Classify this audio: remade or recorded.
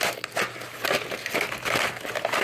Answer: recorded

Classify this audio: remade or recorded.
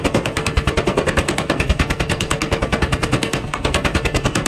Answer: remade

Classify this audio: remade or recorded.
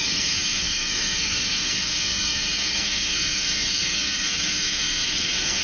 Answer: remade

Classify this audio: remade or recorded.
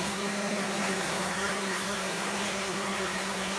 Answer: remade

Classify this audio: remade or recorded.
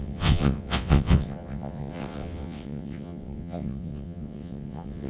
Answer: remade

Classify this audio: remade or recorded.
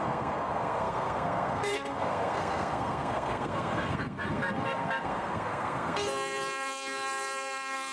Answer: remade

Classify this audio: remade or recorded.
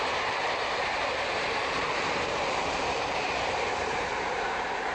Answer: remade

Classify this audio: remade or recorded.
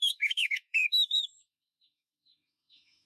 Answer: remade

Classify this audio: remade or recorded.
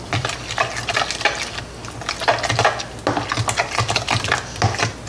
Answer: recorded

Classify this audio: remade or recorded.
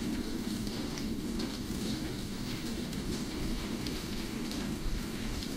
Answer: remade